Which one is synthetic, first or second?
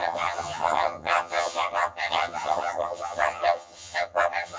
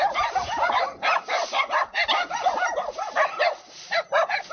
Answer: first